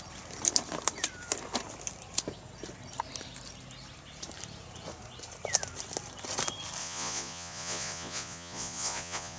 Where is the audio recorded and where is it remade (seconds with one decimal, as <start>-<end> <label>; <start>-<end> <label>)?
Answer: 0.0-6.8 recorded; 6.8-9.4 remade